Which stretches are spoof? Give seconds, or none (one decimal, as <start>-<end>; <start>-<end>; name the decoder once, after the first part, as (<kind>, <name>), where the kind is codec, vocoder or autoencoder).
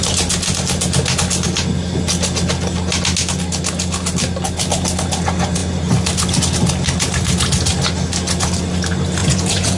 9.2-9.8 (vocoder, Vocos)